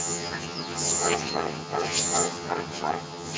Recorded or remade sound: remade